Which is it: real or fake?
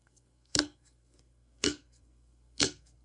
fake